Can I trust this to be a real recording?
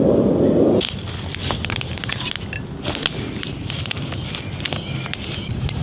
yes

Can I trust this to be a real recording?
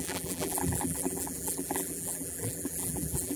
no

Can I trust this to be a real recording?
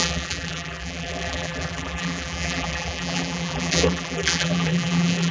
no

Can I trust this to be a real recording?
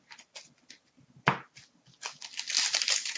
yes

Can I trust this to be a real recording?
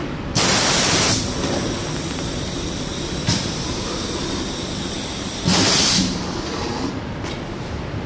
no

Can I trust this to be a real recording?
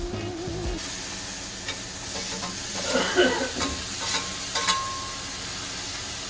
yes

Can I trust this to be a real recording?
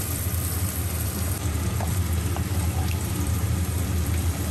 no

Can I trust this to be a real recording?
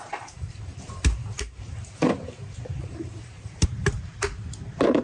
no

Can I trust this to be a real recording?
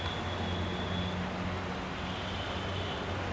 yes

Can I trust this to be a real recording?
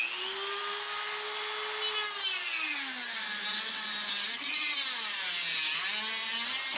yes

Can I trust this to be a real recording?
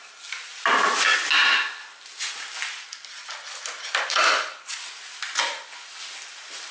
yes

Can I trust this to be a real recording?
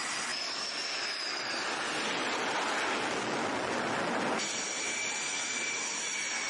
yes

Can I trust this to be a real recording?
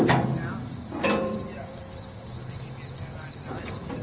yes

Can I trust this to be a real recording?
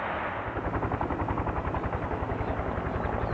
yes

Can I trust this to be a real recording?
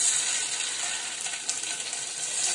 yes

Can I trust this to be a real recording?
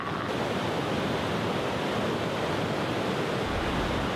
yes